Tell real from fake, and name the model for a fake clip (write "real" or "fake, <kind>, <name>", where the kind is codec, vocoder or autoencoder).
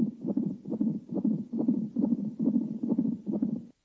real